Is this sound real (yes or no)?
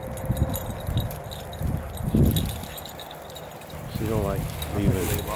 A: yes